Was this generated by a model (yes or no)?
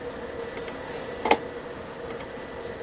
no